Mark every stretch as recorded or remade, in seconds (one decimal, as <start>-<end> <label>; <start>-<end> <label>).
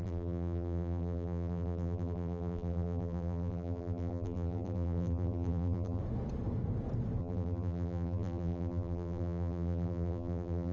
0.0-6.0 remade; 6.0-7.2 recorded; 7.2-10.7 remade